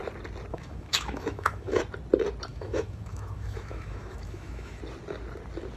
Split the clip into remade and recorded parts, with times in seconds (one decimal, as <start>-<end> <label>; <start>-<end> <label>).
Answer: 0.0-0.5 recorded; 0.5-1.8 remade; 1.8-2.5 recorded; 2.5-4.8 remade; 4.8-5.8 recorded